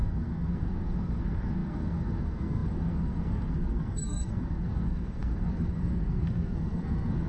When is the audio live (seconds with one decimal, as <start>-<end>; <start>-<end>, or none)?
none